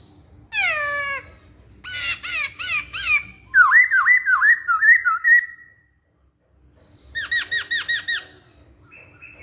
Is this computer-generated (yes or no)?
no